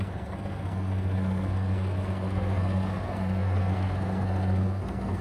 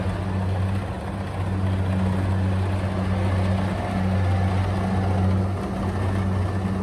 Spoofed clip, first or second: first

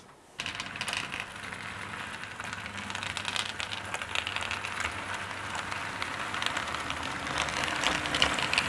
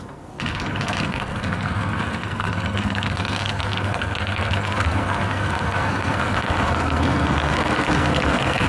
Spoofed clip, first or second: second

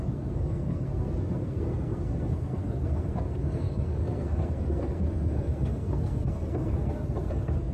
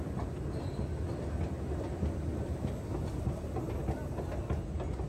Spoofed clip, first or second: first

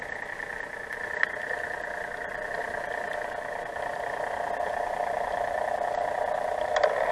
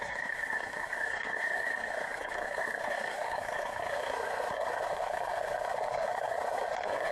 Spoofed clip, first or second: second